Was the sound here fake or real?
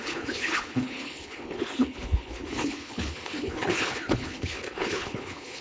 fake